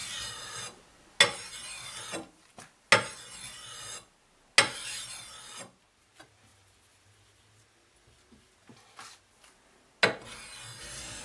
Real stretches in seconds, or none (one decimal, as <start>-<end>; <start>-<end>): 0.0-11.2